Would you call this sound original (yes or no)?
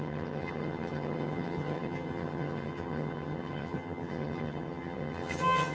no